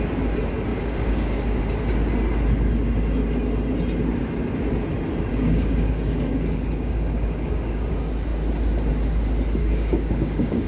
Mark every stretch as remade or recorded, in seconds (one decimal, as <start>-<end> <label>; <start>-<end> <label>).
0.0-0.7 recorded; 0.7-1.6 remade; 1.6-5.3 recorded; 5.3-7.9 remade; 7.9-9.6 recorded; 9.6-10.7 remade

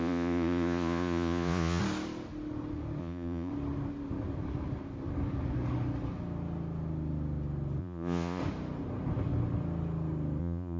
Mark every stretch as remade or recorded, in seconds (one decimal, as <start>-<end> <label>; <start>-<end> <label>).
0.0-1.8 remade; 1.8-3.0 recorded; 3.0-3.5 remade; 3.5-7.8 recorded; 7.8-8.4 remade; 8.4-10.4 recorded; 10.4-10.8 remade

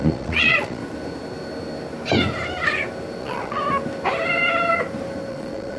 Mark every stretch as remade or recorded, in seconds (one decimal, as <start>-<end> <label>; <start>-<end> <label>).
0.0-0.8 remade; 0.8-3.2 recorded; 3.2-3.6 remade; 3.6-5.3 recorded; 5.3-5.8 remade

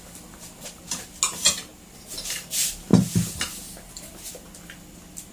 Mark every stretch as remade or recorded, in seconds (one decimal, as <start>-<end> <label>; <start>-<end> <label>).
0.0-5.3 recorded

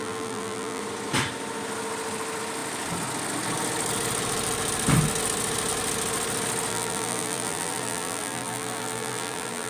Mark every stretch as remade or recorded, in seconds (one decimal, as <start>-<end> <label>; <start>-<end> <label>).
0.0-0.8 remade; 0.8-6.7 recorded; 6.7-9.7 remade

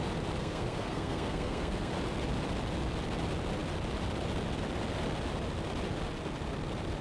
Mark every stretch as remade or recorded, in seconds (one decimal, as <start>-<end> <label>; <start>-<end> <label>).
0.0-0.4 recorded; 0.4-1.9 remade; 1.9-7.0 recorded

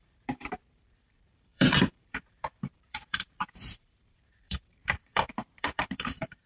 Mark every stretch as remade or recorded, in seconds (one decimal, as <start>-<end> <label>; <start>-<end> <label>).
0.0-6.5 remade

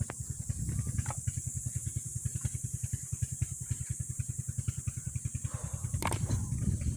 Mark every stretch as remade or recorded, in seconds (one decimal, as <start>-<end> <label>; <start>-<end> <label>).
0.0-1.8 recorded; 1.8-5.1 remade; 5.1-5.8 recorded; 5.8-7.0 remade